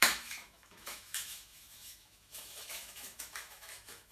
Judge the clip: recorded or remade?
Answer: remade